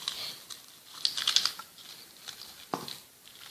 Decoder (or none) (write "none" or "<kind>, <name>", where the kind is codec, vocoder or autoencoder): none